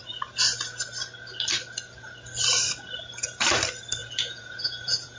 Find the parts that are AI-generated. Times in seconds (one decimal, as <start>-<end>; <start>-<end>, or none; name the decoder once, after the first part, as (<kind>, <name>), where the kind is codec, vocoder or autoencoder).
4.0-5.2 (vocoder, Vocos)